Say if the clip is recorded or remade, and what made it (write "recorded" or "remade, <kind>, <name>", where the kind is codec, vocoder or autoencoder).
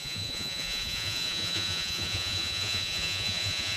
remade, vocoder, Vocos